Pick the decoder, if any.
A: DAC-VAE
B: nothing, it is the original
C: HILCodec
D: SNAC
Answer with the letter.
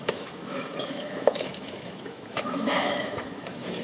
A